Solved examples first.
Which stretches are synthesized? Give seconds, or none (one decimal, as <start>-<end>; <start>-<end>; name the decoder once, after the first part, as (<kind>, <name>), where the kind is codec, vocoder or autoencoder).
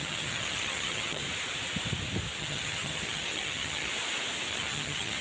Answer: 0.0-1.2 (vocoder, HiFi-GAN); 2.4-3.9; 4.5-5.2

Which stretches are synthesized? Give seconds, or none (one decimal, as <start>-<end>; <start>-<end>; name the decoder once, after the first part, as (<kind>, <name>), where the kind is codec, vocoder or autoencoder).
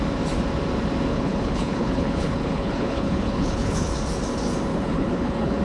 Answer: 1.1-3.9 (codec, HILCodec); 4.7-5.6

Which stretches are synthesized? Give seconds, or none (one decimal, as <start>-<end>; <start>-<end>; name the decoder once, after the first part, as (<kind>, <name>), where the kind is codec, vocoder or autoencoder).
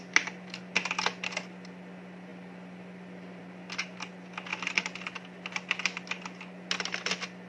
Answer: none